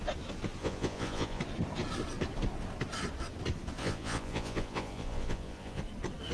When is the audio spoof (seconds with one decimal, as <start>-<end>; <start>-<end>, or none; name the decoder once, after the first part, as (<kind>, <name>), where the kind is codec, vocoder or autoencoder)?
0.6-1.4 (vocoder, Vocos); 3.8-5.8